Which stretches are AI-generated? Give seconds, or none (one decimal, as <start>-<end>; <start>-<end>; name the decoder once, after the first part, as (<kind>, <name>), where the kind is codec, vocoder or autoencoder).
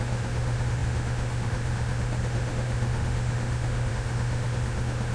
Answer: 0.0-5.1 (autoencoder, DAC-VAE)